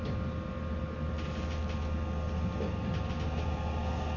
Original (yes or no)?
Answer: yes